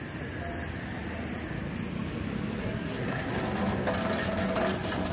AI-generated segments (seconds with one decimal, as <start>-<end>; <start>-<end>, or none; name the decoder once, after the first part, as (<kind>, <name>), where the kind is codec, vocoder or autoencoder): 2.6-3.3 (codec, SNAC)